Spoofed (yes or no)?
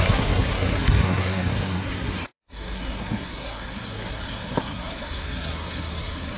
yes